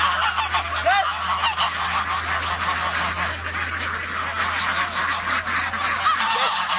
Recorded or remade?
recorded